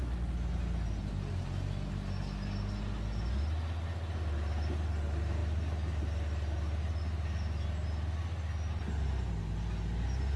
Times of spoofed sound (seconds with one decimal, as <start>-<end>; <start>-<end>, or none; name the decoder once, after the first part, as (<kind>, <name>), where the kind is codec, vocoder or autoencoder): none